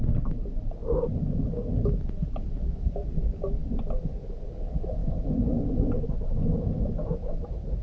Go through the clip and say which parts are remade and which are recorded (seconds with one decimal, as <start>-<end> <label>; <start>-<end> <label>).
0.0-7.8 recorded